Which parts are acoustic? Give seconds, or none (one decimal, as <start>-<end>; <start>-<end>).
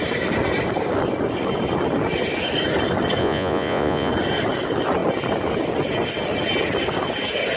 0.0-3.2; 4.1-7.6